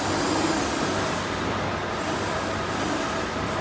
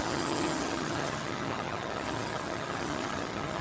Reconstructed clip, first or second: second